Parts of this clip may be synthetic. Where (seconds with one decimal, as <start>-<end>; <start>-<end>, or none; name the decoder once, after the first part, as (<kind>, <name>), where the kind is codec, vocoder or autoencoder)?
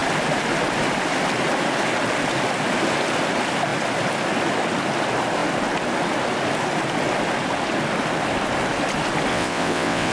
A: 9.3-10.1 (vocoder, WaveNeXt)